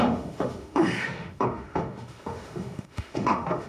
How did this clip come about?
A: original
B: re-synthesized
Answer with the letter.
B